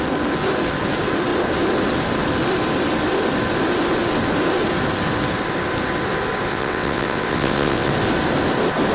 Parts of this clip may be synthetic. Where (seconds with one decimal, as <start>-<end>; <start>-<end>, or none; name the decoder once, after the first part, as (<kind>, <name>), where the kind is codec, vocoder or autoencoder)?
6.5-7.9 (vocoder, WaveNeXt)